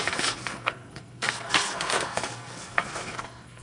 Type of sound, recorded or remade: remade